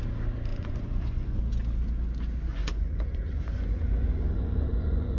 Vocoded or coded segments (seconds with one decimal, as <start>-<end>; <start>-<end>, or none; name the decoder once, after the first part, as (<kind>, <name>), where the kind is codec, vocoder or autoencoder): 0.5-1.4 (vocoder, Vocos); 2.5-5.2